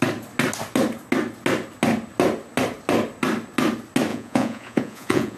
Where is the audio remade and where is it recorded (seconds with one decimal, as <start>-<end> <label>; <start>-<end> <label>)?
0.0-4.1 recorded; 4.1-5.4 remade